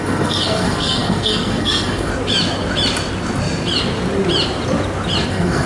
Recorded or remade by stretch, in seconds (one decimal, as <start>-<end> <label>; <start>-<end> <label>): 0.0-2.1 remade; 2.1-5.3 recorded; 5.3-5.7 remade